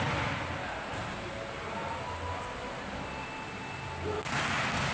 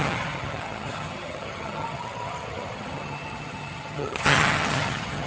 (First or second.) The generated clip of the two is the second